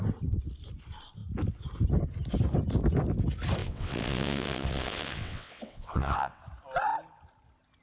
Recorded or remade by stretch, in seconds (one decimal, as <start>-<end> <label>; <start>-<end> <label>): 0.0-3.6 recorded; 3.6-6.4 remade; 6.4-7.8 recorded